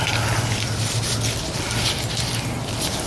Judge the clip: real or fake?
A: real